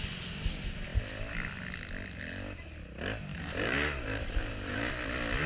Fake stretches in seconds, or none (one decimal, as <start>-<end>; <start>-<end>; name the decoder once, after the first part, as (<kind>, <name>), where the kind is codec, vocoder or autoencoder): 3.3-4.9 (vocoder, BigVGAN v2)